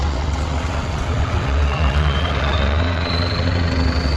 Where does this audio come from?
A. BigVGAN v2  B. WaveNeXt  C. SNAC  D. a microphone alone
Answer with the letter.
B